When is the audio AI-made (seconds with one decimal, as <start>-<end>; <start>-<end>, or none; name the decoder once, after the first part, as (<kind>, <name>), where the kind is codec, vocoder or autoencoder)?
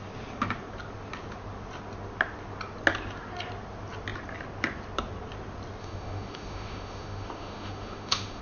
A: 5.8-8.4 (autoencoder, DAC-VAE)